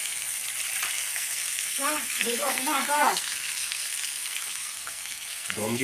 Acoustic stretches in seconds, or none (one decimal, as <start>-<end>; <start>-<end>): 0.4-0.9